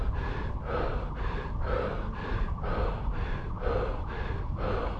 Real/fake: real